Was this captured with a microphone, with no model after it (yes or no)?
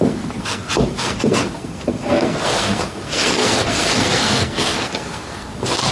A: no